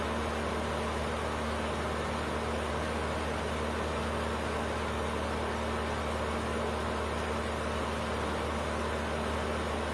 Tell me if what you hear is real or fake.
real